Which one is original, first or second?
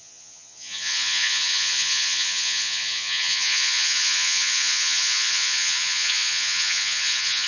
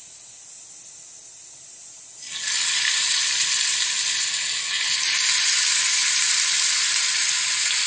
second